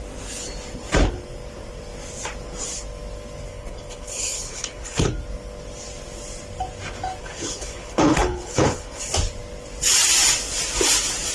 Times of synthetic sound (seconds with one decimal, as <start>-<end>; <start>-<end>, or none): 3.5-5.1; 7.2-9.0